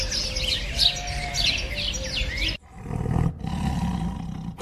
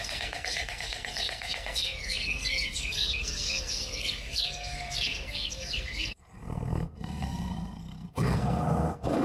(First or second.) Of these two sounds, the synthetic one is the second